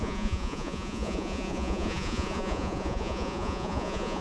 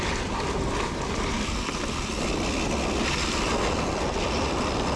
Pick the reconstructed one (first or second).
first